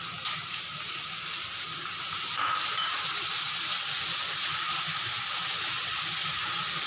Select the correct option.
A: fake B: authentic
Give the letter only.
A